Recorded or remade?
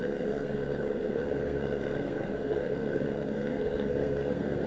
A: remade